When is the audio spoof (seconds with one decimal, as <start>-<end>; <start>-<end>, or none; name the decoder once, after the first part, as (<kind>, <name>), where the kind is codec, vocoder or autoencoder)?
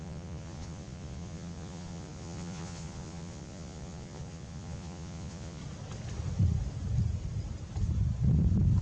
0.0-5.6 (vocoder, Vocos)